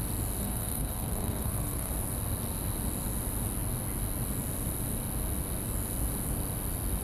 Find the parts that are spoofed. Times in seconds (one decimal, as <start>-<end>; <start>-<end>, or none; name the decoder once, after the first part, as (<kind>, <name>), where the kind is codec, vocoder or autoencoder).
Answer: 0.4-1.9 (codec, SNAC)